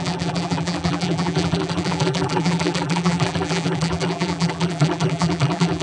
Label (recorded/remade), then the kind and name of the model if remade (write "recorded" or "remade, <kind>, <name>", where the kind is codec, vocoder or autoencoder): remade, vocoder, BigVGAN v2